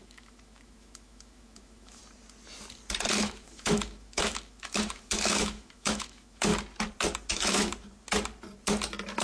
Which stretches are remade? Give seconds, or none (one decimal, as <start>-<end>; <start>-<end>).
0.0-2.0; 3.2-6.5; 7.3-7.7